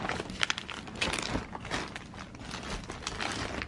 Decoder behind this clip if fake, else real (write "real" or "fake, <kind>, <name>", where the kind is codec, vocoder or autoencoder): real